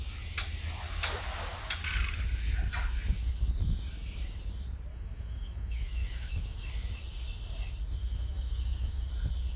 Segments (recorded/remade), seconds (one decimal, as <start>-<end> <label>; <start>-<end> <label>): 0.0-4.9 recorded; 4.9-6.7 remade; 6.7-8.0 recorded; 8.0-9.1 remade; 9.1-9.6 recorded